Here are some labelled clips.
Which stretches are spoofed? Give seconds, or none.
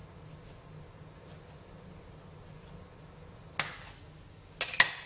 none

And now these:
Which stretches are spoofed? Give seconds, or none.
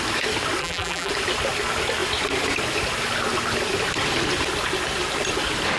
0.6-1.1 (vocoder, BigVGAN v2)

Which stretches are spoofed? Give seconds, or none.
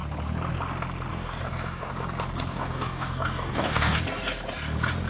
1.1-1.9 (codec, DAC); 2.5-4.0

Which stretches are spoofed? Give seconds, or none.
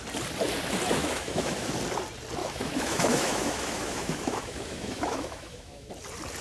1.0-1.7 (autoencoder, DAC-VAE); 2.4-5.9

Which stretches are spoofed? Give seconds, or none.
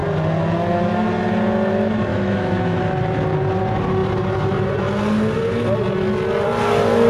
2.1-2.8 (autoencoder, DAC-VAE)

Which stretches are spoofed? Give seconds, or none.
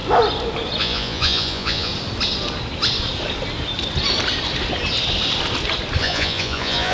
0.8-1.9 (vocoder, Vocos); 6.0-6.9